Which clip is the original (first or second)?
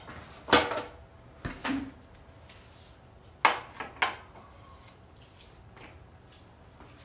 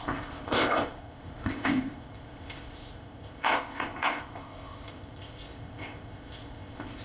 first